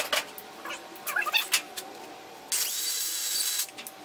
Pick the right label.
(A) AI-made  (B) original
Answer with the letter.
B